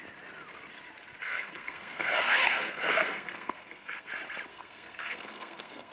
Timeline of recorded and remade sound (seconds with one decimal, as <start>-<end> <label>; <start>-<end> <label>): 0.0-1.2 recorded; 1.2-4.1 remade; 4.1-4.5 recorded; 4.5-5.9 remade